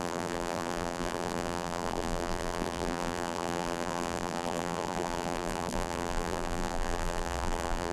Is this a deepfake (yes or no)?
yes